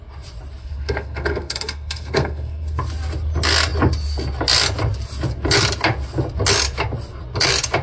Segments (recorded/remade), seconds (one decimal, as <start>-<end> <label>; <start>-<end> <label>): 0.0-0.6 recorded; 0.6-2.8 remade; 2.8-7.8 recorded